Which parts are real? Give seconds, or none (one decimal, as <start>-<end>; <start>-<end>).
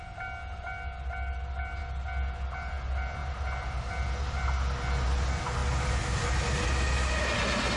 0.0-7.8